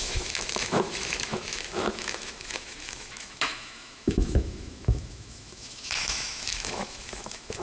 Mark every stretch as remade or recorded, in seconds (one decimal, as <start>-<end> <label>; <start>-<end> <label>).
0.0-7.6 remade